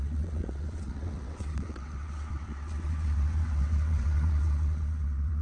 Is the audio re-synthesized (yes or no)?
yes